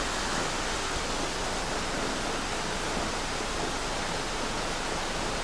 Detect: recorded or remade recorded